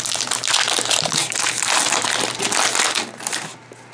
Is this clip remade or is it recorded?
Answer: recorded